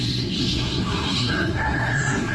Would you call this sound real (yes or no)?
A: no